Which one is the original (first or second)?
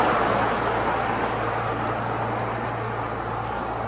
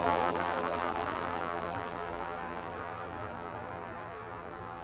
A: first